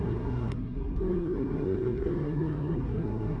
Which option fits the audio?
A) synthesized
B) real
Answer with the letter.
A